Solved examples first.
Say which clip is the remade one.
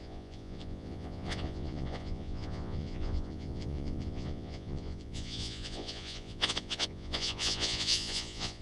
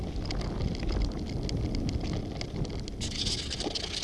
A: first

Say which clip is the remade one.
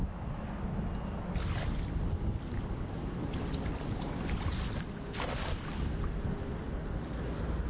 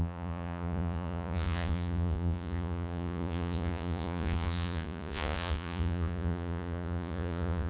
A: second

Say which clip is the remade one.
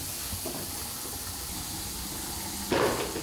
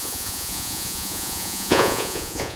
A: second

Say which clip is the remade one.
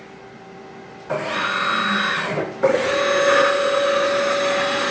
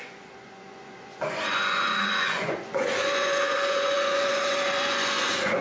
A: second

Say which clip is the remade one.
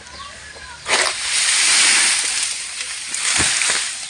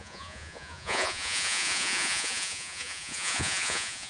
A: second